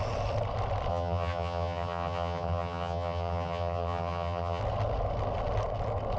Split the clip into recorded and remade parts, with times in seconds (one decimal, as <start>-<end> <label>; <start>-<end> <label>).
0.0-0.9 recorded; 0.9-4.6 remade; 4.6-6.2 recorded